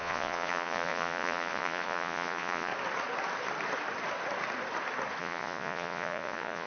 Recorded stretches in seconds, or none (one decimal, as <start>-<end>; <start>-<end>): 2.7-5.2